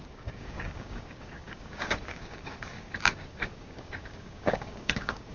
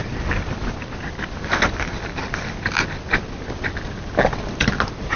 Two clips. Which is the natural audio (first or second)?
second